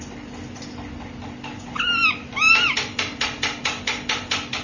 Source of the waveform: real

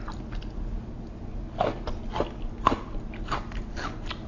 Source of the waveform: real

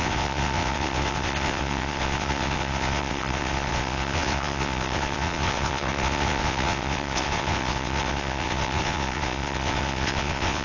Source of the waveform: fake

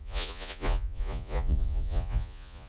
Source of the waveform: fake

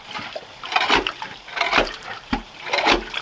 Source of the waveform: fake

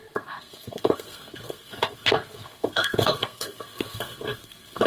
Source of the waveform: fake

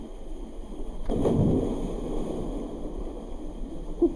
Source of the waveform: real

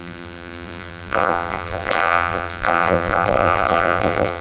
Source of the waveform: fake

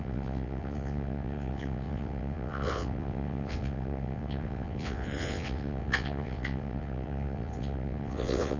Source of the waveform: fake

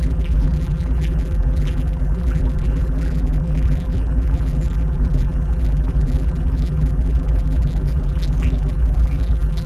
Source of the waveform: fake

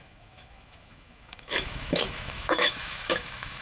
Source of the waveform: fake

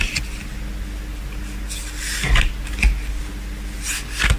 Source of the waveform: real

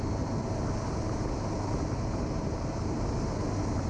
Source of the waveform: real